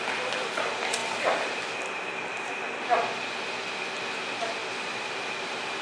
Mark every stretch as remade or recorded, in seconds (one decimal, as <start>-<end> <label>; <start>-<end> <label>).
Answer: 0.0-5.8 recorded